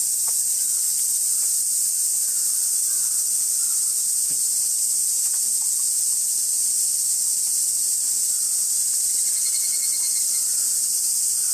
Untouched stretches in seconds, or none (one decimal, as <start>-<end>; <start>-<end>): 0.0-11.5